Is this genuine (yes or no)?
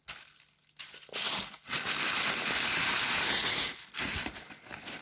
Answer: yes